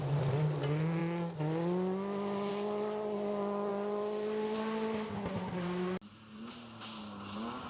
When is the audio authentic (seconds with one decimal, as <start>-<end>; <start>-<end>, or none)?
0.0-7.7

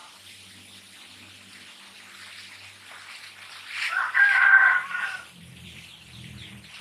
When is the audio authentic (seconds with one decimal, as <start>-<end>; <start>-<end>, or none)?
0.0-4.1

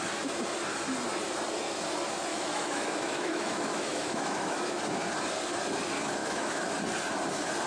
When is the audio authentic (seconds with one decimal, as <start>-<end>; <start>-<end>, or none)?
0.0-2.3; 4.8-6.2; 6.7-7.7

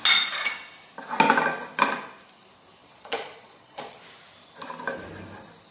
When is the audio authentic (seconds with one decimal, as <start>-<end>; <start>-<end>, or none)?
0.0-2.8; 4.0-5.7

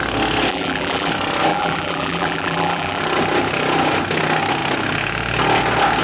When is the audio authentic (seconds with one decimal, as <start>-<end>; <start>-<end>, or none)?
0.0-0.5; 1.1-1.5; 3.0-6.0

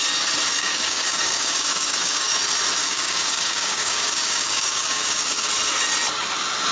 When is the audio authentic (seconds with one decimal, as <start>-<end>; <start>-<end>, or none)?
0.0-0.6; 2.3-2.8; 5.5-6.7

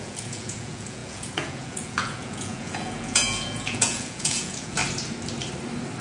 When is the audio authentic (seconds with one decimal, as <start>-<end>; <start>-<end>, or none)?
4.8-6.0